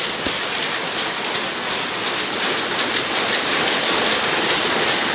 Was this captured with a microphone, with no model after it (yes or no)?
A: yes